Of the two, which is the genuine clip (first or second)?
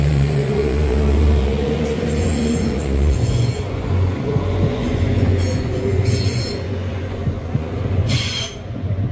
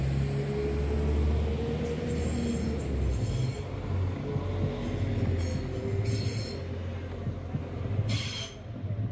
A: second